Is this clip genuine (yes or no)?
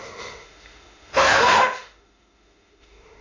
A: no